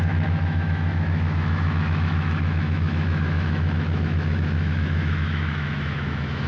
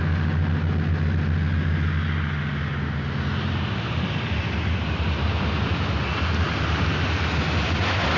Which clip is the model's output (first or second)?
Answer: first